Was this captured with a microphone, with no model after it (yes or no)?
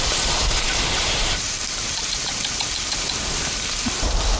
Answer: no